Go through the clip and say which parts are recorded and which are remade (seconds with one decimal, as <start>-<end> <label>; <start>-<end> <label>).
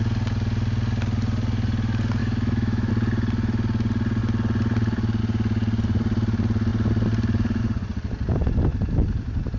0.0-2.2 recorded; 2.2-2.9 remade; 2.9-9.6 recorded